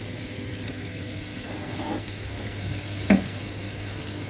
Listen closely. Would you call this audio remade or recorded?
remade